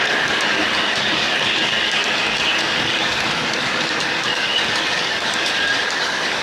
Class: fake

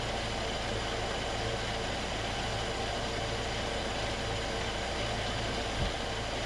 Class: real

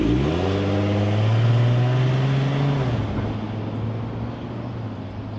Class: real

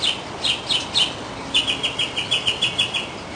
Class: real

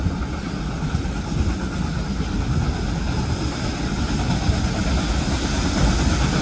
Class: real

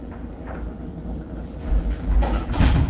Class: fake